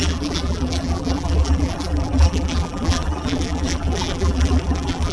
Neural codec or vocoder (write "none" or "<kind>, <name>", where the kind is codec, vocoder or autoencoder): vocoder, BigVGAN v2